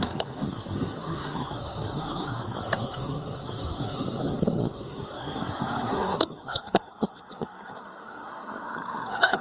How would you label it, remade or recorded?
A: remade